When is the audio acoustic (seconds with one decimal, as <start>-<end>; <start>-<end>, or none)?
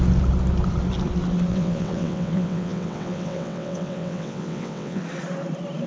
0.0-1.5; 5.0-5.9